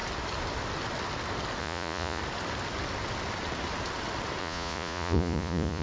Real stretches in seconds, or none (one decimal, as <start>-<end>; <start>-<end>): 0.0-1.6; 2.2-4.4

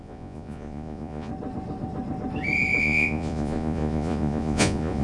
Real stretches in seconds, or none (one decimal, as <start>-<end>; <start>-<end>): 1.3-2.8

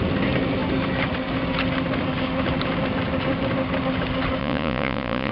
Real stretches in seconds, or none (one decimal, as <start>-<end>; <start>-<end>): 0.0-4.4

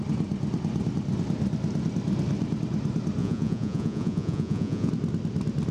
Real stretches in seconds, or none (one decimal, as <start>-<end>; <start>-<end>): 0.0-3.2; 4.9-5.7